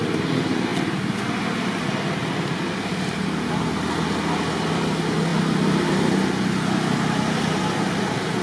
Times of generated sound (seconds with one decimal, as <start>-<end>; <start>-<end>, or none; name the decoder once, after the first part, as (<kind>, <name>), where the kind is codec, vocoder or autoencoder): none